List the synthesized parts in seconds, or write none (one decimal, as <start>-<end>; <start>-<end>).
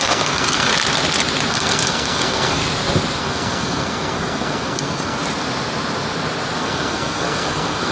0.0-0.7; 1.5-2.6; 3.2-5.2; 6.6-7.9